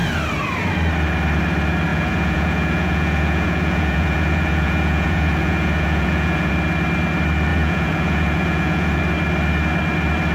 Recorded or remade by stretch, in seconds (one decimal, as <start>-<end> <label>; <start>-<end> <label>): 0.0-1.9 recorded; 1.9-6.5 remade; 6.5-7.5 recorded; 7.5-9.0 remade; 9.0-10.3 recorded